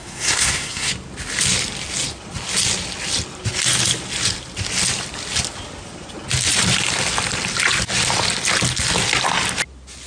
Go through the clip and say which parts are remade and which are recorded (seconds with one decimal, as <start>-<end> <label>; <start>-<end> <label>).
0.0-0.9 remade; 0.9-10.1 recorded